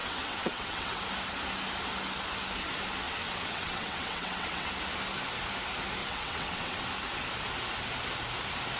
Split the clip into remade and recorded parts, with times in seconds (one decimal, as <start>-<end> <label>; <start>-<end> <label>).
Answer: 0.0-1.0 remade; 1.0-3.2 recorded; 3.2-4.7 remade; 4.7-6.0 recorded; 6.0-6.8 remade; 6.8-8.8 recorded